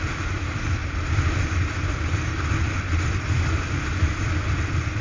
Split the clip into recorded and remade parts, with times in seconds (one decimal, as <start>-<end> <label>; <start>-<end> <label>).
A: 0.0-5.0 recorded